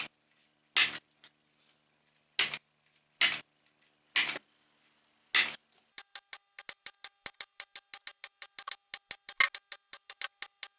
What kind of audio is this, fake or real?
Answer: real